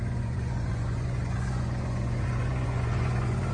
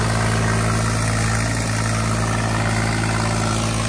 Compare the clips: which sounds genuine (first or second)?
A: second